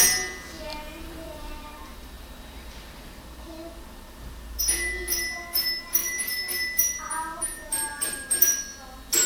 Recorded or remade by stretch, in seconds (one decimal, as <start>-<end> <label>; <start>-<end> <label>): 0.0-0.7 recorded; 0.7-2.4 remade; 2.4-9.3 recorded